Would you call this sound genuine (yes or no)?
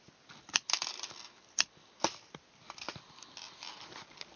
yes